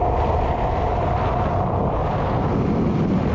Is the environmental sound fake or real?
real